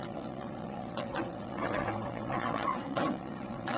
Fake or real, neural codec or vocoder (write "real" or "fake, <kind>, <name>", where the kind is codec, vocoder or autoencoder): fake, vocoder, WaveNeXt